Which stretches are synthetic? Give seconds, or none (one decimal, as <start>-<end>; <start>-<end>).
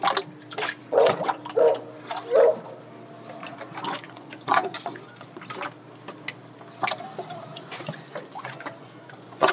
0.8-1.4; 3.4-5.4; 7.5-9.5